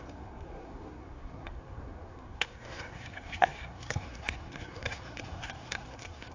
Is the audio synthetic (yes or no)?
yes